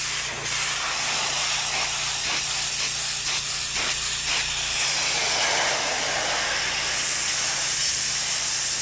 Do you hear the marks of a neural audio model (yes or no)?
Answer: no